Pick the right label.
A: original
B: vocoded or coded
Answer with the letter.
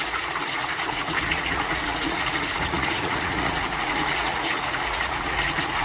B